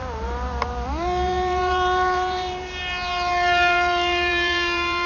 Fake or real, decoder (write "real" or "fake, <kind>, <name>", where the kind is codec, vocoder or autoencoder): fake, vocoder, BigVGAN v2